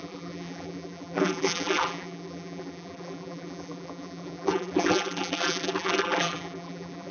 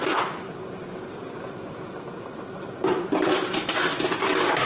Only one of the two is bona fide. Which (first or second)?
second